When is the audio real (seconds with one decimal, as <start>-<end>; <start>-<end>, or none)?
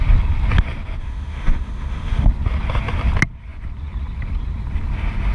0.0-1.0; 2.3-5.3